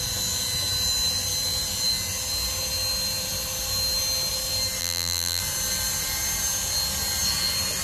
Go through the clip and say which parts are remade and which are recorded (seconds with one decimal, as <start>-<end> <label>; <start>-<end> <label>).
0.0-4.8 recorded; 4.8-5.4 remade; 5.4-7.8 recorded